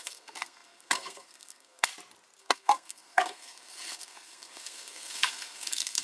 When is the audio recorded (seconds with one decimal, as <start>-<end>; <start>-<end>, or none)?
1.9-2.4